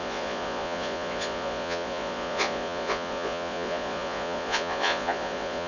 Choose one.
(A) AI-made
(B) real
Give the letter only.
A